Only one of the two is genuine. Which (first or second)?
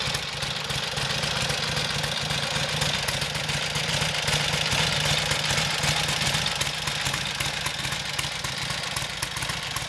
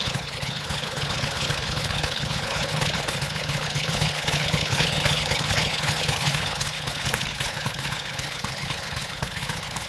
first